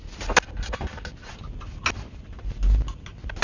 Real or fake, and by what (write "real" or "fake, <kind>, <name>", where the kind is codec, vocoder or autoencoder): real